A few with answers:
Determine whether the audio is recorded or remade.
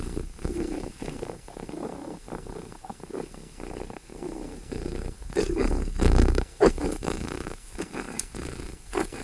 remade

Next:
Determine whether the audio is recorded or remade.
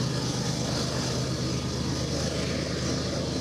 recorded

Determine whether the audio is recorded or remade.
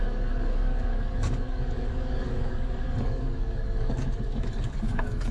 remade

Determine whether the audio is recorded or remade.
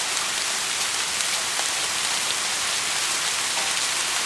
recorded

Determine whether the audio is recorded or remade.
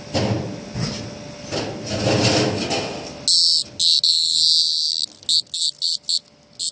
recorded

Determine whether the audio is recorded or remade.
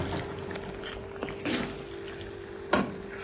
recorded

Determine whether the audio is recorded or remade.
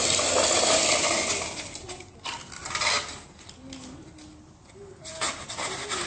recorded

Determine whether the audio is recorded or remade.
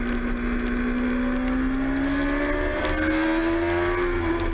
recorded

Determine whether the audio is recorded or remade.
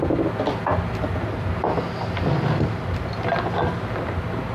recorded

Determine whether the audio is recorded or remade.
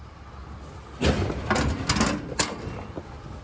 recorded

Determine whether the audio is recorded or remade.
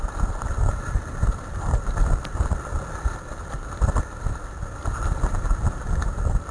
remade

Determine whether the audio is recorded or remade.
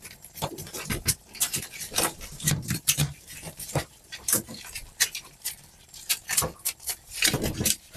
remade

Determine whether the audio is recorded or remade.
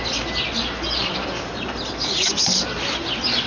recorded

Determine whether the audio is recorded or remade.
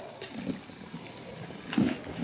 recorded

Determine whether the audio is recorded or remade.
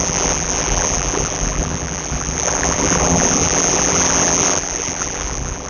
remade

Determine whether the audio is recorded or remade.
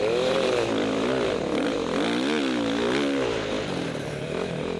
remade